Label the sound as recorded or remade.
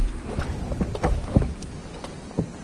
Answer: recorded